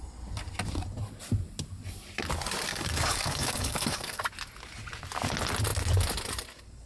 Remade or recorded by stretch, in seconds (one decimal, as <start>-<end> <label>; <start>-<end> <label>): 0.0-2.7 recorded; 2.7-4.2 remade; 4.2-6.9 recorded